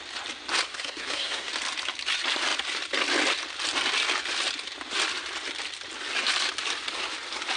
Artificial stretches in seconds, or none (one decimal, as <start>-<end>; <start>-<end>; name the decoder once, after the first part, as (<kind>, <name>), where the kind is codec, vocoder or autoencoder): 0.6-1.5 (codec, SNAC)